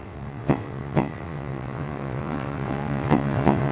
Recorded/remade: remade